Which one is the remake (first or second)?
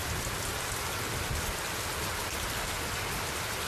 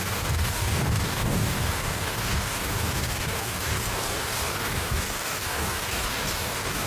second